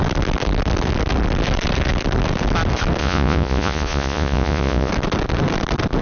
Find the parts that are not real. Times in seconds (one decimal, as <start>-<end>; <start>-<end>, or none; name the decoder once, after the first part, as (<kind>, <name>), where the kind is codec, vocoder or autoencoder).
3.0-4.9 (vocoder, Vocos)